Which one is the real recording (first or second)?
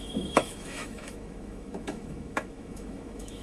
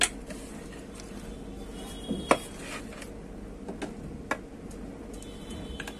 second